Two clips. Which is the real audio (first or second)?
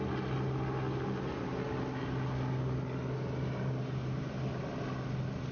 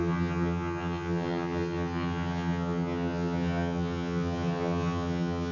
first